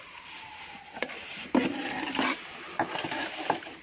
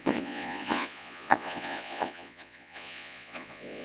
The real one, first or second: first